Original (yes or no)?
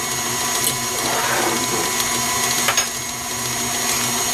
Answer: yes